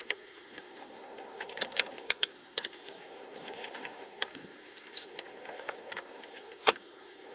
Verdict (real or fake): fake